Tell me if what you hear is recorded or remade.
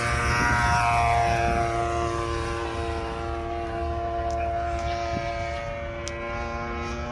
recorded